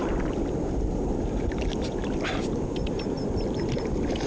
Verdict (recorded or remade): recorded